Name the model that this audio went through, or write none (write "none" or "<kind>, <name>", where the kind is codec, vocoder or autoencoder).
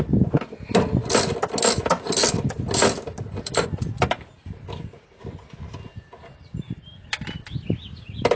none